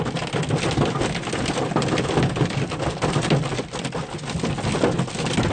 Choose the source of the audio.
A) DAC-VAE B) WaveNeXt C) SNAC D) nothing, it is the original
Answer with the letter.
D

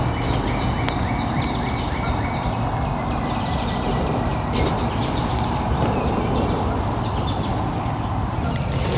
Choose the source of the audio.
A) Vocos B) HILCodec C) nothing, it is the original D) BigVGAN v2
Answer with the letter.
C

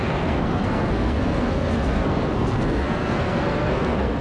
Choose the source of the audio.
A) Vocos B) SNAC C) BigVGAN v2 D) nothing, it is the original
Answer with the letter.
B